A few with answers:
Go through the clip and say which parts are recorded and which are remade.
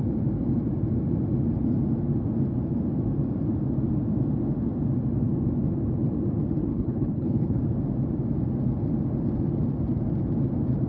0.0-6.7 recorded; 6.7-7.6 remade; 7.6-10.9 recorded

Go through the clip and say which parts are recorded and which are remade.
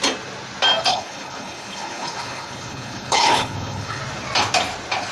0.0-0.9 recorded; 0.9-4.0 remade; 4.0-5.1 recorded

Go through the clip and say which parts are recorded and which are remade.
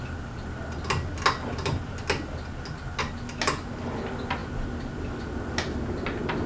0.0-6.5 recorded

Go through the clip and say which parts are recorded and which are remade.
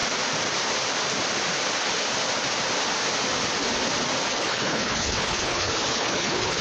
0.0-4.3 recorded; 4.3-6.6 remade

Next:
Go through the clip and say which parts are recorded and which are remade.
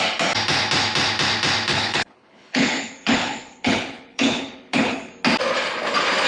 0.0-1.7 recorded; 1.7-5.1 remade; 5.1-6.3 recorded